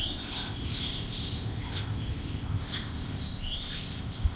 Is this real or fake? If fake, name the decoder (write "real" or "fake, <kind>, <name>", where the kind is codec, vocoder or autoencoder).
fake, codec, ZipCodec